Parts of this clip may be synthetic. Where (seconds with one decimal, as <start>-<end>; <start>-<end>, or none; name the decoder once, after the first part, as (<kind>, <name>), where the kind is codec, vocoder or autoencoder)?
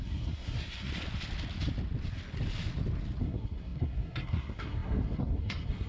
0.0-0.9 (codec, SNAC); 3.2-5.9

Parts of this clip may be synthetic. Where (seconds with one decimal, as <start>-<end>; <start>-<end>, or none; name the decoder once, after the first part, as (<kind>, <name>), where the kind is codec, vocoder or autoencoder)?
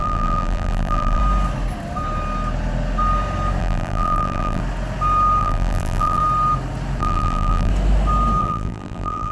0.0-1.2 (vocoder, BigVGAN v2); 3.6-4.6; 5.4-6.2; 7.0-7.7; 8.4-9.3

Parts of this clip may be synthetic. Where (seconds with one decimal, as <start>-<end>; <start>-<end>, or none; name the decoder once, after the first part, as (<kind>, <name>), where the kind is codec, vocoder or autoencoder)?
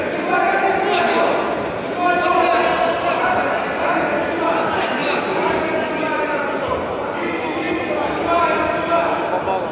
none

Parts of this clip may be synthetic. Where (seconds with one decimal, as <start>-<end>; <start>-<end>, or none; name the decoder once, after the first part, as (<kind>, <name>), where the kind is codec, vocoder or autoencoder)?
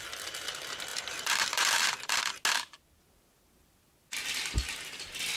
0.9-2.2 (vocoder, BigVGAN v2)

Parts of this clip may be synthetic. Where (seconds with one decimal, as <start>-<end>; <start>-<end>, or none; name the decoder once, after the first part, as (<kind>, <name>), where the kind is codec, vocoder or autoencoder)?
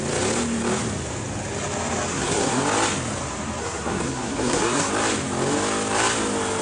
2.1-2.6 (codec, SNAC); 3.6-4.9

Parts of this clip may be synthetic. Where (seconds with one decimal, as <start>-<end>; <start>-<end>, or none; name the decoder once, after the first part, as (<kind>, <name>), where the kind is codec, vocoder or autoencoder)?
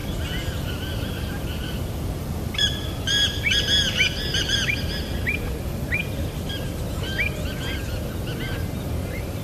0.0-4.7 (vocoder, BigVGAN v2); 6.0-6.8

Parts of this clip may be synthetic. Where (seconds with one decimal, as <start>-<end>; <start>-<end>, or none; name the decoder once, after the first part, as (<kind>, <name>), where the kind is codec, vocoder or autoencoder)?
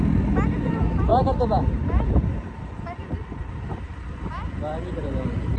1.1-4.5 (vocoder, BigVGAN v2)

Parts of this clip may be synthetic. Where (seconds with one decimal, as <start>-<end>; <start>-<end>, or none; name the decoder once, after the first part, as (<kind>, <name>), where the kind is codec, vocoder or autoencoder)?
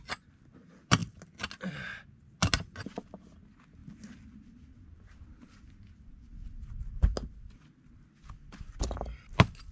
none